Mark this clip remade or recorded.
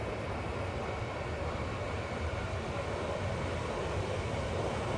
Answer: recorded